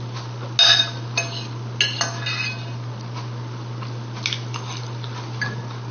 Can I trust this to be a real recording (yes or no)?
yes